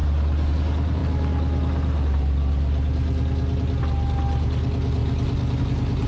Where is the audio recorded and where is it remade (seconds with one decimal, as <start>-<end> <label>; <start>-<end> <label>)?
0.0-6.1 recorded